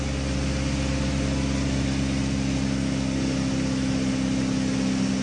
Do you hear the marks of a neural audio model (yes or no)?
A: no